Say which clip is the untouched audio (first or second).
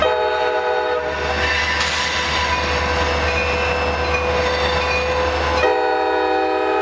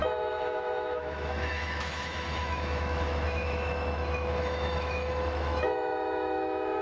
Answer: first